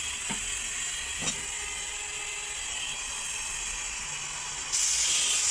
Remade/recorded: recorded